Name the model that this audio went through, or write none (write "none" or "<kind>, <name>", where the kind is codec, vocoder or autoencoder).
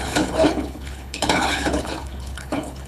codec, HILCodec